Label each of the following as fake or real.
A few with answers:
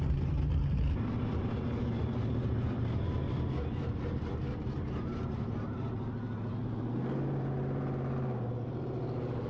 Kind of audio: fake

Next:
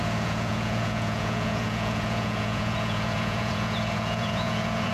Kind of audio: fake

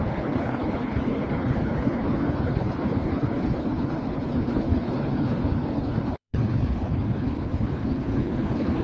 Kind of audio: fake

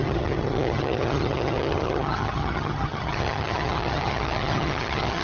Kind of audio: fake